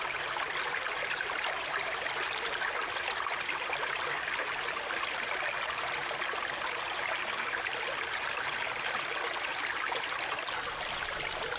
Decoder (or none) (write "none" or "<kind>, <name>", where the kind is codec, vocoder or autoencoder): none